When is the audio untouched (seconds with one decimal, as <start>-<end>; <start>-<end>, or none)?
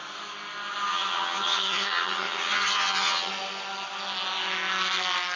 0.0-0.9; 3.3-5.4